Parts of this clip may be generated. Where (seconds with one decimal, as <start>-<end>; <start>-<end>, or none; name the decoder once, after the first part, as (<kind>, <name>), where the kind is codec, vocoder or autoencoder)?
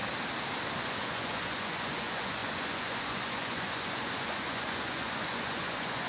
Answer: 0.8-6.1 (vocoder, Vocos)